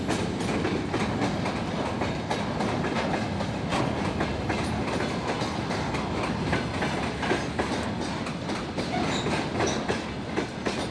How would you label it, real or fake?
real